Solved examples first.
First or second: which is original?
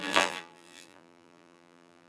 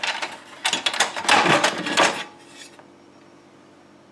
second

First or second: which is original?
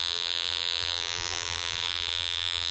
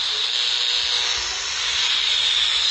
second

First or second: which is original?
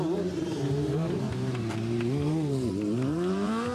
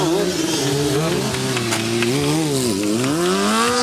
second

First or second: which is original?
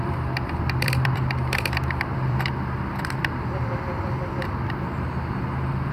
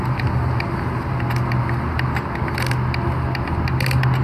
second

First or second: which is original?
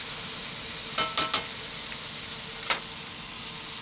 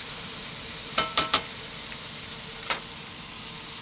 first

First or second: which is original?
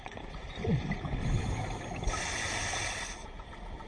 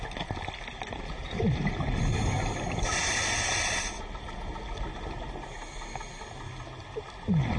second